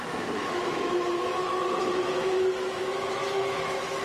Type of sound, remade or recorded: remade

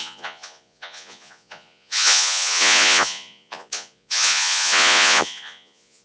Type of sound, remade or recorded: remade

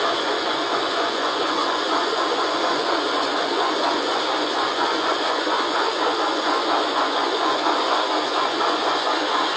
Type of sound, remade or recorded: remade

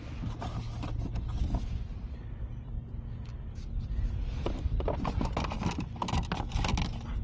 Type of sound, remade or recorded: recorded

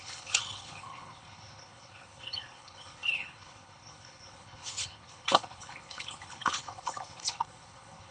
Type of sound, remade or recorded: remade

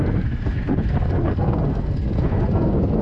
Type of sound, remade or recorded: remade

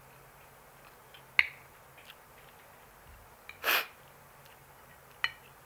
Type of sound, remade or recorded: recorded